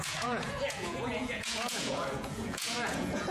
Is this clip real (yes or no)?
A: no